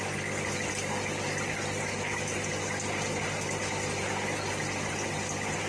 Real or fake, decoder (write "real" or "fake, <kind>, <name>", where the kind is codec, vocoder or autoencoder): real